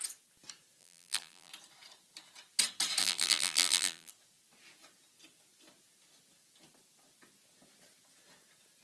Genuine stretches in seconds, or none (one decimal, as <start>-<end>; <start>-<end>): 0.0-0.8; 1.5-3.0; 4.1-8.8